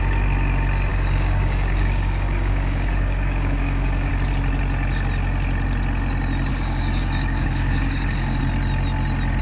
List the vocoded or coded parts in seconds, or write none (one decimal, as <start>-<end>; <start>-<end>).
0.9-4.1; 6.5-8.4